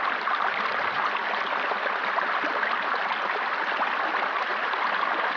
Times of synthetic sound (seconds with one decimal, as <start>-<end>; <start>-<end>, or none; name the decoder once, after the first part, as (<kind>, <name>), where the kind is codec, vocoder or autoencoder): 1.2-2.5 (vocoder, BigVGAN v2); 4.5-5.4